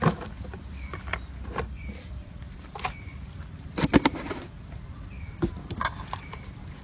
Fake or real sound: fake